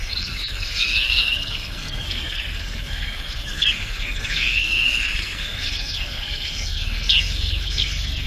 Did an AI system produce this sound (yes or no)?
yes